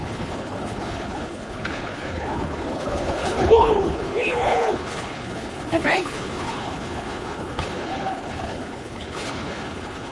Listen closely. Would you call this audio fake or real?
fake